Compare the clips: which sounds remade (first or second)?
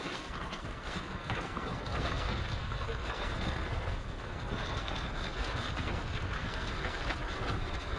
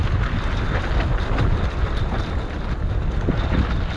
first